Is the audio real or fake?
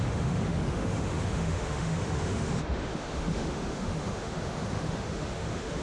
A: fake